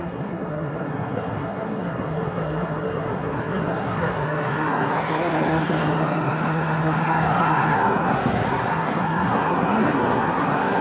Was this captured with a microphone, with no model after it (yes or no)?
no